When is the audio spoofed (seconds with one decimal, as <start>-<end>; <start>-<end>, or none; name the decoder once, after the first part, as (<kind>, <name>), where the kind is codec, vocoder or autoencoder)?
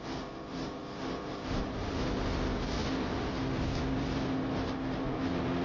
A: none